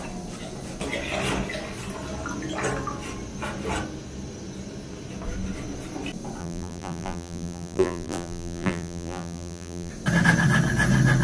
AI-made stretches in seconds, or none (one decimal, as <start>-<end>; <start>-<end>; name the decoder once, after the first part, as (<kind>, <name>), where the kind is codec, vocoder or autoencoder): 6.4-9.9 (vocoder, BigVGAN v2)